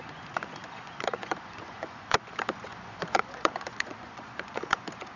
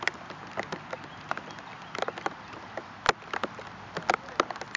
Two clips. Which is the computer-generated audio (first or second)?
first